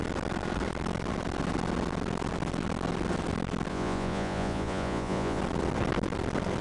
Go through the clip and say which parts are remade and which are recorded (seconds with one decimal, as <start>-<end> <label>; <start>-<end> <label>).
0.0-3.7 recorded; 3.7-5.4 remade; 5.4-6.6 recorded